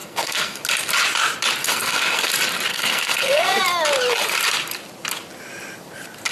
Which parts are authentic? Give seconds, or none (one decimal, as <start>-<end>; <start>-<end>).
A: 0.6-1.6; 2.3-2.7; 3.6-6.3